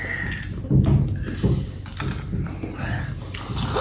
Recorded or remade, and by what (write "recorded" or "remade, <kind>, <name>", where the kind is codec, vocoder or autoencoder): recorded